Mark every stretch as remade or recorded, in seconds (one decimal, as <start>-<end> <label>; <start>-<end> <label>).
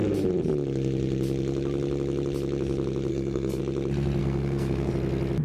0.0-3.1 recorded; 3.1-3.6 remade; 3.6-4.2 recorded; 4.2-4.9 remade; 4.9-5.4 recorded